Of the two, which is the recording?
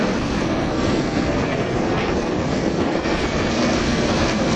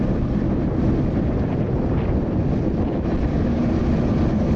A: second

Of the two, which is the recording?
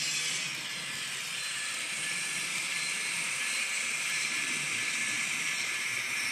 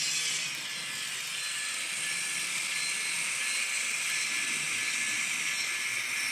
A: second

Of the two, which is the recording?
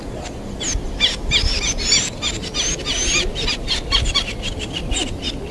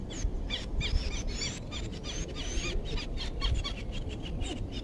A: first